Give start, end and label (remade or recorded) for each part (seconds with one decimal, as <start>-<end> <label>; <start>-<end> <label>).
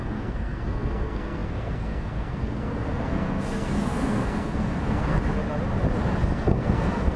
0.0-5.2 remade; 5.2-6.2 recorded; 6.2-7.2 remade